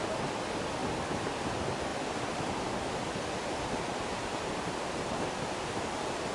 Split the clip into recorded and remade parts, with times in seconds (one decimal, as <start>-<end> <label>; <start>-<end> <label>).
0.0-6.3 recorded